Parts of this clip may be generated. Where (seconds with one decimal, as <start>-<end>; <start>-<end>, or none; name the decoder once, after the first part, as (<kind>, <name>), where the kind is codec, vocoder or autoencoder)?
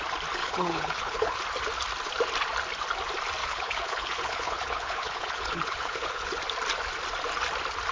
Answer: 0.4-1.4 (codec, HILCodec); 3.4-6.4